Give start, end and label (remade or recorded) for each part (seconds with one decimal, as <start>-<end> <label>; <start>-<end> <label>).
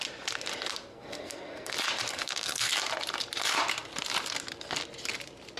0.0-0.9 recorded; 0.9-1.7 remade; 1.7-2.1 recorded; 2.1-2.7 remade; 2.7-5.6 recorded